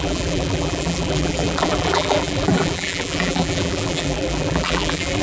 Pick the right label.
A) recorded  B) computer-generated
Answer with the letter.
B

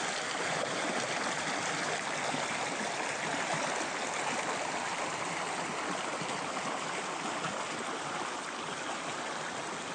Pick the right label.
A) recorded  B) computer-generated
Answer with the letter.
A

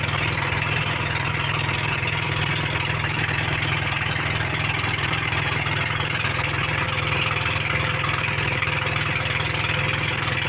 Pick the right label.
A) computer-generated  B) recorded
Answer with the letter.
A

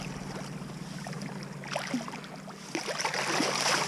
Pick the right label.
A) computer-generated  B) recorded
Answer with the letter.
B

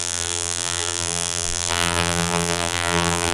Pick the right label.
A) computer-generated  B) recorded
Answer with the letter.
A